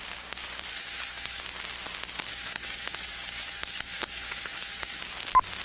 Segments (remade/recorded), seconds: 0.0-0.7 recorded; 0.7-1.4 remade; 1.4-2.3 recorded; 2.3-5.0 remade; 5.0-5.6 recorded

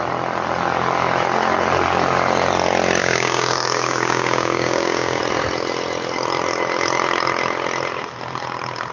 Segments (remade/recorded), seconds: 0.0-3.0 recorded; 3.0-5.2 remade; 5.2-8.9 recorded

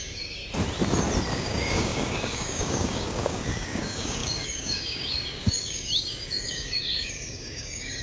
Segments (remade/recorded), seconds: 0.0-0.4 remade; 0.4-1.3 recorded; 1.3-8.0 remade

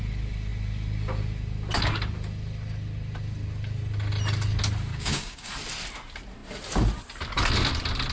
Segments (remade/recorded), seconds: 0.0-4.9 recorded; 4.9-5.5 remade; 5.5-8.1 recorded